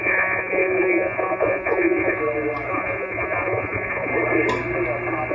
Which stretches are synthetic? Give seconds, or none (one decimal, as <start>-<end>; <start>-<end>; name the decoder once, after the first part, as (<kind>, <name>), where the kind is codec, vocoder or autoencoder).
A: 0.0-2.2 (vocoder, Vocos); 2.7-4.1